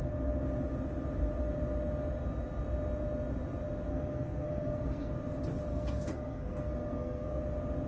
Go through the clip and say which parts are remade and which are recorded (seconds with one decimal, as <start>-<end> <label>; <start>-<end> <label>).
0.0-3.9 recorded; 3.9-5.1 remade; 5.1-5.7 recorded; 5.7-7.4 remade; 7.4-7.9 recorded